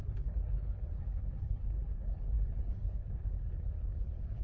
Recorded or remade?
remade